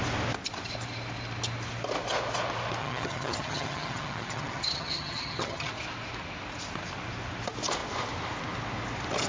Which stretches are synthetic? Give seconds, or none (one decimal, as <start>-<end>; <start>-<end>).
2.8-5.7